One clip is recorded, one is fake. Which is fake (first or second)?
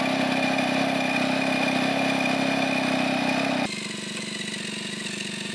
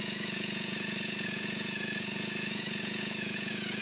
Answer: second